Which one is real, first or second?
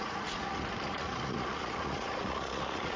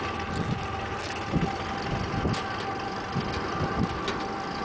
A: second